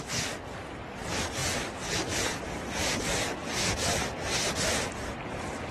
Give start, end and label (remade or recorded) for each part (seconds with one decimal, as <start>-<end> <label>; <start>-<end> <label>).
0.0-1.4 recorded; 1.4-2.3 remade; 2.3-3.4 recorded; 3.4-5.2 remade; 5.2-5.7 recorded